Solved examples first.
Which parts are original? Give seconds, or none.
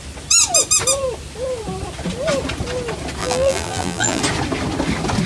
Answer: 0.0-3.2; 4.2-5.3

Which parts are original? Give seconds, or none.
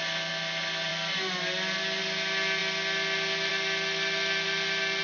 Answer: 0.0-5.0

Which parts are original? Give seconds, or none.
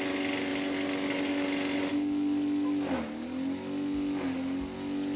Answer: 0.0-5.2